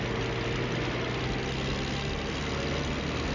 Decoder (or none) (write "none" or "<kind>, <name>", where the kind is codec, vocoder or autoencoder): none